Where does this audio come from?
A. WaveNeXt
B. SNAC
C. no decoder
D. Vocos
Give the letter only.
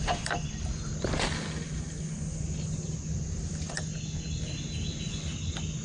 C